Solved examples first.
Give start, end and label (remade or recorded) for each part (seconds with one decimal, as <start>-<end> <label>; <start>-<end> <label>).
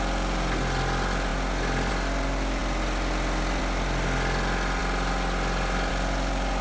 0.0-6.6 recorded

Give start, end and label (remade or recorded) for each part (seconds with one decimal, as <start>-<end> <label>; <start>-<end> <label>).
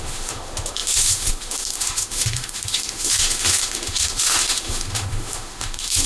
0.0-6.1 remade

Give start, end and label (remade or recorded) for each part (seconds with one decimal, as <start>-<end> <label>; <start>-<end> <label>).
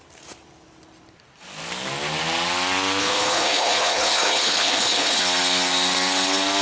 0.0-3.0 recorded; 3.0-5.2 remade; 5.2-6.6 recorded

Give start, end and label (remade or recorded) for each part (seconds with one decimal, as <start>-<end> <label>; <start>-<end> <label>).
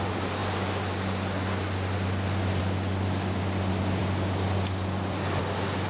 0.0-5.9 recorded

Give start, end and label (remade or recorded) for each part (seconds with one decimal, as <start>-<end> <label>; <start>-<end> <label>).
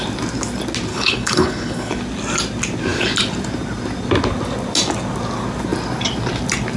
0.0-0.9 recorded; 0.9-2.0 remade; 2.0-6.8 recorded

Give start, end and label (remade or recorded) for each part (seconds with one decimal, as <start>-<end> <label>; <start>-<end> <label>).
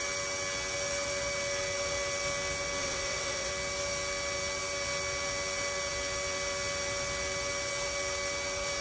0.0-2.8 recorded; 2.8-3.5 remade; 3.5-8.8 recorded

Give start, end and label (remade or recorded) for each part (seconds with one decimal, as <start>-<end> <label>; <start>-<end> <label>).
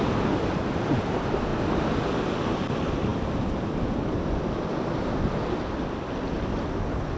0.0-7.2 recorded